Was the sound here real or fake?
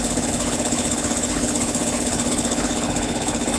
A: fake